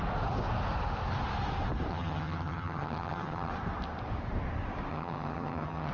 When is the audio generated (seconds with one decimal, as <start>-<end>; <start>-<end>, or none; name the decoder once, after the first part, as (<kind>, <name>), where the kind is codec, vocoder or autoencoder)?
1.9-3.5 (vocoder, HiFi-GAN); 4.9-5.9